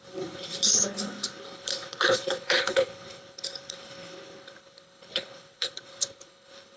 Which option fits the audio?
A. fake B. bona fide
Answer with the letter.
A